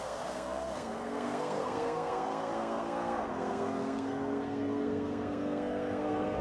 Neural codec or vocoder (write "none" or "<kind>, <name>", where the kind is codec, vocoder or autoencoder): codec, SNAC